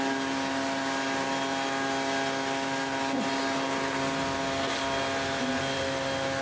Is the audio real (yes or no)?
yes